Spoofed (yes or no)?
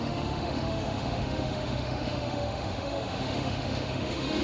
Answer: yes